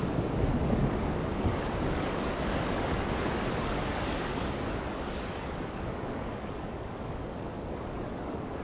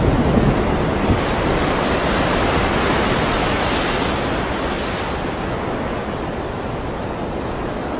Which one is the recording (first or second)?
second